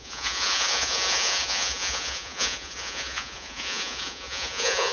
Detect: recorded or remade remade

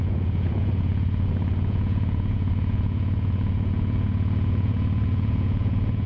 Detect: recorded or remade remade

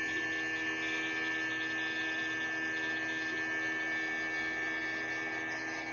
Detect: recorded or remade recorded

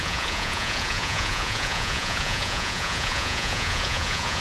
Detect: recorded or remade remade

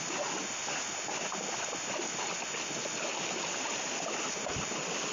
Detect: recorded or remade recorded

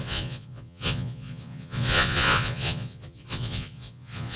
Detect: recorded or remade remade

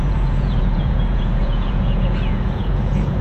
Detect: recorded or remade remade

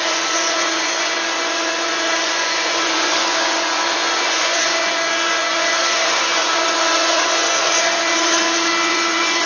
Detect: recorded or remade remade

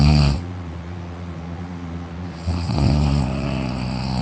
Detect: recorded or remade remade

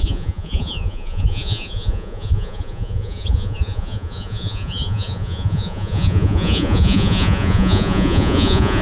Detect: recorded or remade remade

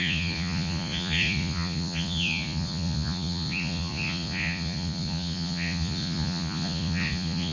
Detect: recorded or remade remade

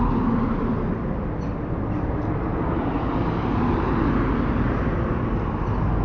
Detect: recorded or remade recorded